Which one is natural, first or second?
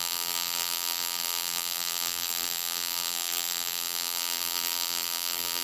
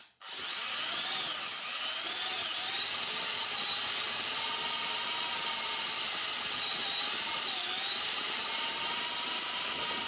second